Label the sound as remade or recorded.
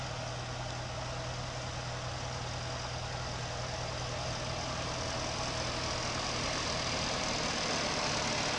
recorded